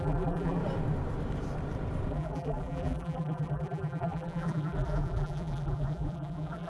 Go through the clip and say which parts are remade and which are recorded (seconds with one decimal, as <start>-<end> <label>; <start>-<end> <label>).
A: 0.0-0.6 remade; 0.6-2.1 recorded; 2.1-6.7 remade